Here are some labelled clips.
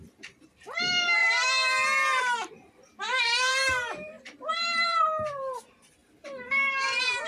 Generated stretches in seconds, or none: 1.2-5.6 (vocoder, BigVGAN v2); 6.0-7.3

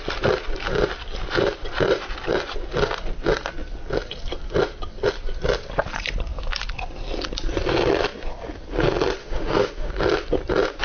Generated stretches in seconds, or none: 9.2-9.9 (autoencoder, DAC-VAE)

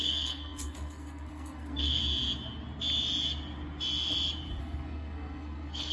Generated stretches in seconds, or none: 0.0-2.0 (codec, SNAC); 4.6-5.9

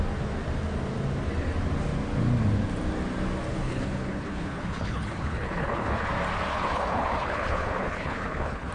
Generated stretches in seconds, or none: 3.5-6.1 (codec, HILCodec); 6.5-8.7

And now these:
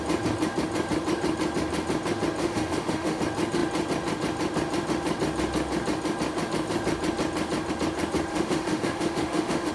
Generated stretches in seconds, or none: 2.4-3.2 (autoencoder, DAC-VAE); 8.3-9.7

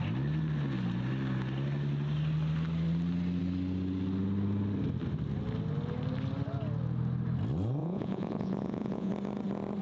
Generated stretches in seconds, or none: 7.8-9.1 (vocoder, Vocos)

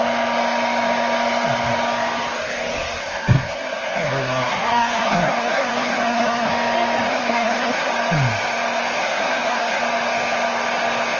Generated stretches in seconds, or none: 3.0-6.5 (codec, SNAC); 7.1-7.9; 9.0-9.8

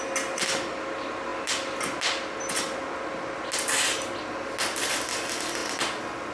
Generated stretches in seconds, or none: none